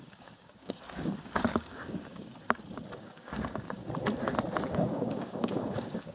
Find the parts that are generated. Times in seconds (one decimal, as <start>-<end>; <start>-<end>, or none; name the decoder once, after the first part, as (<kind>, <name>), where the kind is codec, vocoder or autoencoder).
0.0-2.3 (codec, DAC); 3.0-3.8; 4.7-6.1